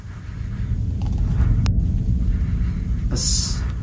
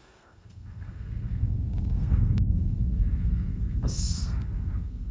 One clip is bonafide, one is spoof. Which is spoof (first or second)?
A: second